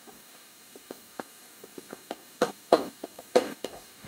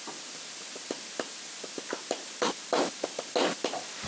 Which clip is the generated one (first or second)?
first